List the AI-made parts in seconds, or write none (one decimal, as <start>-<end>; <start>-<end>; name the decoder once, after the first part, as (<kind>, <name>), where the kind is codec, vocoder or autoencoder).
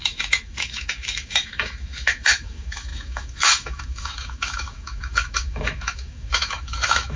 0.0-7.2 (autoencoder, DAC-VAE)